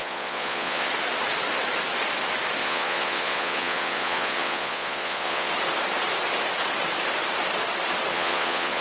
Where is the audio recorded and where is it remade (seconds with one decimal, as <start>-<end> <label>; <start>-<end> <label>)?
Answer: 0.0-0.9 remade; 0.9-2.6 recorded; 2.6-5.5 remade; 5.5-8.1 recorded; 8.1-8.8 remade